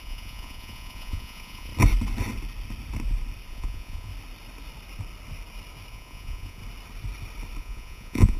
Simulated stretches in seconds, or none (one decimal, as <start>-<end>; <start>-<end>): 0.0-1.7; 3.5-4.1; 5.9-6.6; 7.6-8.4